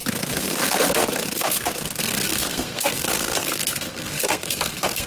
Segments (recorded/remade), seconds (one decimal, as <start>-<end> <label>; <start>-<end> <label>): 0.0-5.1 remade